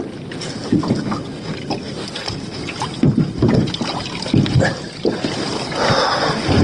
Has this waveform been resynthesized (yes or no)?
no